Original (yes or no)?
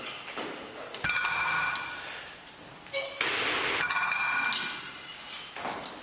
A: yes